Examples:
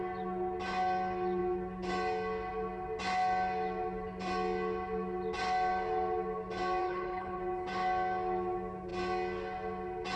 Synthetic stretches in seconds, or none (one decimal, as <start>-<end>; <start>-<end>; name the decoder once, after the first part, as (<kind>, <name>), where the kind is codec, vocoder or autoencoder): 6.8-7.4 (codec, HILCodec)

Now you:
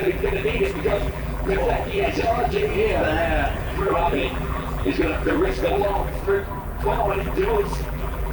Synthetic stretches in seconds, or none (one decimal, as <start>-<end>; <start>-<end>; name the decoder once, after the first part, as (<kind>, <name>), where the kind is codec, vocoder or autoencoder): 0.0-2.7 (vocoder, BigVGAN v2); 3.7-6.2; 6.8-8.3

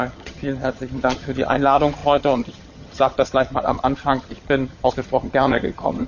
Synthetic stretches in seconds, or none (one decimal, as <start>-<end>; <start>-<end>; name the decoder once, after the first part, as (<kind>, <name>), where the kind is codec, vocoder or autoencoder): 0.0-6.1 (vocoder, HiFi-GAN)

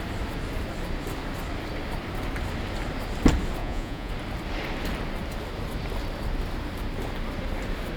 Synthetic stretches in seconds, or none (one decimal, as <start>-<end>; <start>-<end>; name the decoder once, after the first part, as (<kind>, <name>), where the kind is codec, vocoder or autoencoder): 3.6-4.1 (vocoder, Vocos)

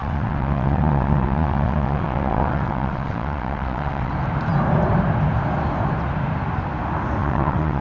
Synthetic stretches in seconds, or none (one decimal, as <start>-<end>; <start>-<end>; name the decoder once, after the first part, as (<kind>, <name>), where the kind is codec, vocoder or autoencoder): 0.0-4.1 (vocoder, WaveNeXt); 7.2-7.8